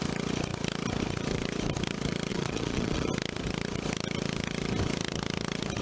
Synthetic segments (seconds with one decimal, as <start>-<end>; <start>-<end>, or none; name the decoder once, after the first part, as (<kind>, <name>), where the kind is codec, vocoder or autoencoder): 2.3-3.1 (vocoder, Vocos)